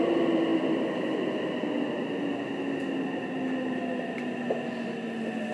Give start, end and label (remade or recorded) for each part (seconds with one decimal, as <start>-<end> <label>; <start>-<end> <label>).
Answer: 0.0-5.5 recorded